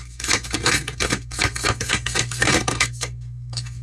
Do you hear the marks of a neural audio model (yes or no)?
yes